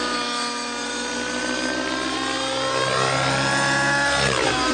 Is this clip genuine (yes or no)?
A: yes